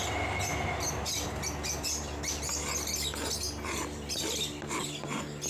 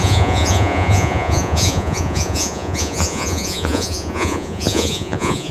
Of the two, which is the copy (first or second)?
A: second